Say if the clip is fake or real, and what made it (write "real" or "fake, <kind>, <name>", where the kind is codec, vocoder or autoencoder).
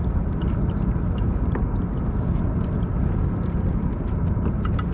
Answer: real